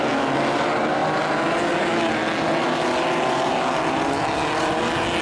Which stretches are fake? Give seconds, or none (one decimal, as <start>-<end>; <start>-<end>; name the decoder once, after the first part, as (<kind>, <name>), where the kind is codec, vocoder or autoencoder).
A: none